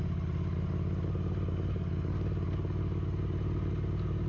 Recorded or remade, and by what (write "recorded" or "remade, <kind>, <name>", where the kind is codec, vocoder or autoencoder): recorded